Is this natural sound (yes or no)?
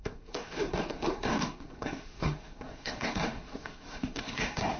no